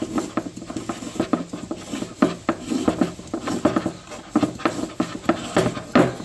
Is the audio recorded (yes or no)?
yes